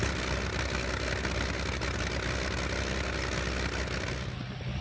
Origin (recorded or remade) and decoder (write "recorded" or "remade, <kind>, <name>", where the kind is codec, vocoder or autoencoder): recorded